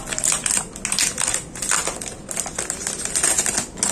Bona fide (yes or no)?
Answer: yes